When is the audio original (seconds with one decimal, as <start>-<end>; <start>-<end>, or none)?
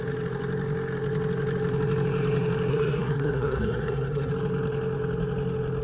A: 0.0-2.7; 4.3-5.8